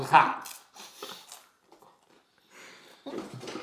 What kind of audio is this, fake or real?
real